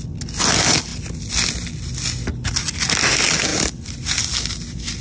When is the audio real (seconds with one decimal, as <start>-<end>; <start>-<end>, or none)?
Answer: 0.0-5.0